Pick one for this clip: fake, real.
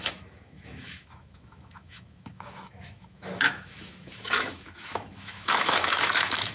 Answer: fake